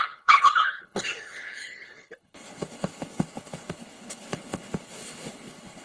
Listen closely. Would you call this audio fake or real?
fake